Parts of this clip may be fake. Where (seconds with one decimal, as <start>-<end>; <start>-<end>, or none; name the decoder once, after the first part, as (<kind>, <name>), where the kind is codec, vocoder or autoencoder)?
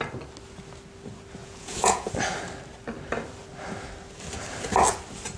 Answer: 1.4-2.1 (vocoder, Vocos)